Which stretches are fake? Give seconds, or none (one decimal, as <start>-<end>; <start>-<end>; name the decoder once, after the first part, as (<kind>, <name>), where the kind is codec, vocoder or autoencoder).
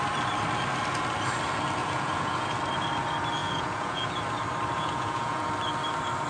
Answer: 1.8-2.5 (vocoder, Vocos); 3.4-4.1; 4.7-5.5